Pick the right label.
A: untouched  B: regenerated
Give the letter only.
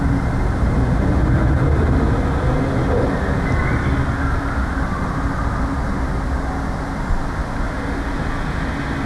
A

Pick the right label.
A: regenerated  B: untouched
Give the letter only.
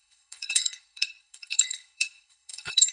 A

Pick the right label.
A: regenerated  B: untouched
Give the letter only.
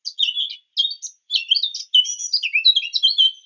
B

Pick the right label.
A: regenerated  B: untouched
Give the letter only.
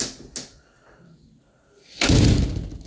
B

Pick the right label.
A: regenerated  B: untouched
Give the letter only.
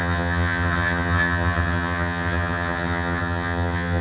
A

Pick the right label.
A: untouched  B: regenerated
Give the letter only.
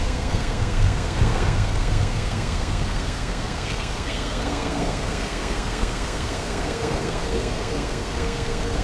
B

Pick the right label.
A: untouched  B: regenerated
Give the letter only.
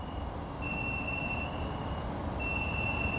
A